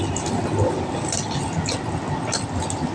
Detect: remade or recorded recorded